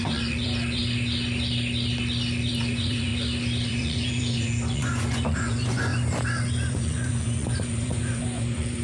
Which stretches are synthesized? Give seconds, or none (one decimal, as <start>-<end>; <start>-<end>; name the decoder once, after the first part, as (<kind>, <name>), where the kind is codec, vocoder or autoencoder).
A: 0.0-0.8 (vocoder, Vocos); 2.5-3.1; 3.7-5.9; 6.7-8.8